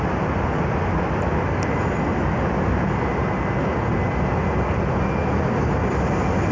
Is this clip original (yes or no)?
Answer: yes